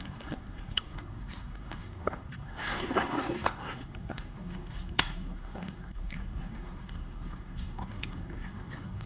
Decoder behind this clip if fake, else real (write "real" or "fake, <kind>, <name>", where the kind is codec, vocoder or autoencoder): fake, codec, SNAC